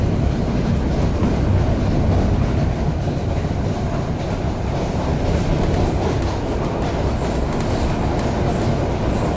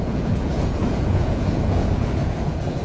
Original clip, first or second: first